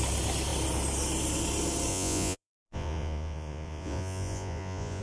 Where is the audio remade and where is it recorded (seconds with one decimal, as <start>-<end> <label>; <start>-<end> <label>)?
0.0-1.9 recorded; 1.9-5.0 remade